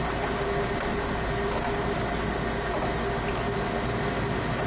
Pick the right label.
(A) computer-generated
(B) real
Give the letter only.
B